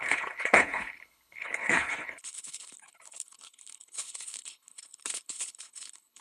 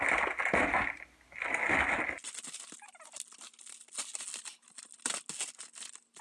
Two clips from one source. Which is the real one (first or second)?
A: second